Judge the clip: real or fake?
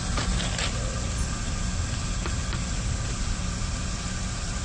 real